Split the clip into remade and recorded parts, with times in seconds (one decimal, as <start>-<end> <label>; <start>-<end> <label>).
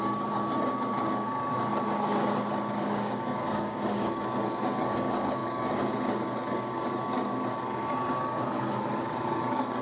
0.0-1.7 remade; 1.7-2.7 recorded; 2.7-9.8 remade